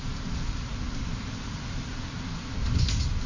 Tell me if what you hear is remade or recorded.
recorded